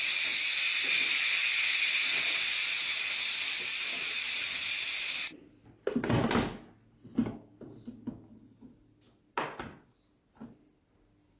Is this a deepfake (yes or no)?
no